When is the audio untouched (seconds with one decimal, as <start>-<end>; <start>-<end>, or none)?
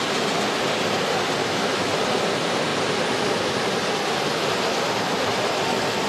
0.0-1.4; 1.9-6.1